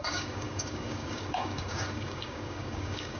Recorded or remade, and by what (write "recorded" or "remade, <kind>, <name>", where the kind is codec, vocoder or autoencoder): remade, codec, DAC